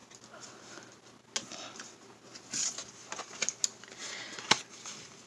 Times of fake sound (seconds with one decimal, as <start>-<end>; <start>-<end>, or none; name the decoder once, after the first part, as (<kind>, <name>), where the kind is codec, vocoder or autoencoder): none